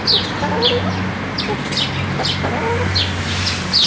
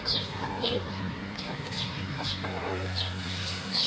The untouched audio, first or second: first